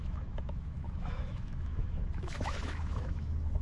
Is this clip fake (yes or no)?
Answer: yes